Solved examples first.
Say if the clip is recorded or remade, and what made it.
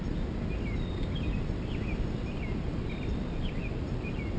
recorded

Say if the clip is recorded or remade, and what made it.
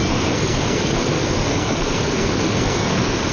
remade, codec, SNAC